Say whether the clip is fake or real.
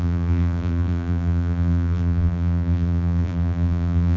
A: fake